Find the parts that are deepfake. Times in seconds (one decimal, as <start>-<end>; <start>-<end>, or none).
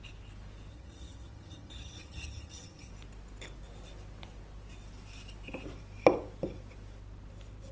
0.7-2.9